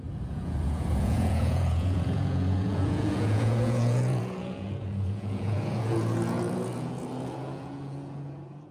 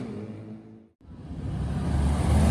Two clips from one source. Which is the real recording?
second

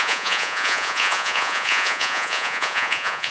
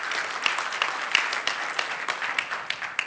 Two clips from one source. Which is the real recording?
second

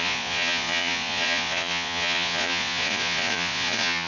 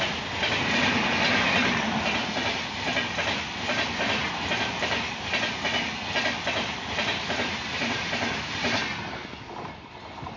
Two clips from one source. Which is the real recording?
second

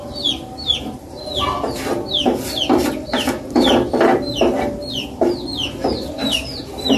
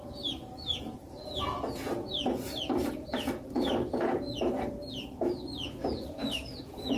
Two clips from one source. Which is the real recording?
first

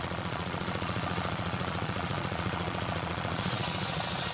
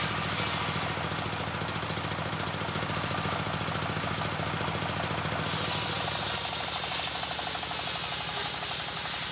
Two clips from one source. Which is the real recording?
second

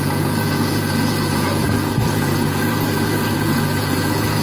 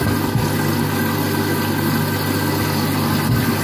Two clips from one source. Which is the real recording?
second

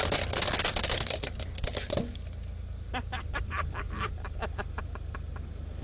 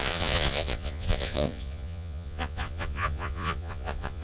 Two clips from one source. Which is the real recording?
first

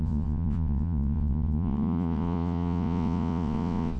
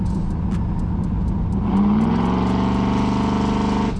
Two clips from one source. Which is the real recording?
second